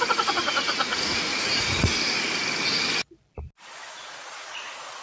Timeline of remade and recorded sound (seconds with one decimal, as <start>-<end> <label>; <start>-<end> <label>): 0.0-1.9 remade; 1.9-4.0 recorded; 4.0-5.0 remade